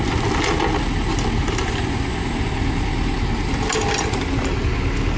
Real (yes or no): yes